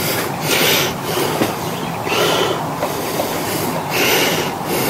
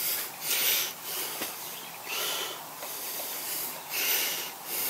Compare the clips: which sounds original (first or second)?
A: first